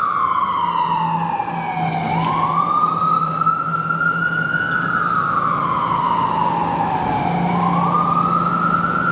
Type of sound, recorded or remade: recorded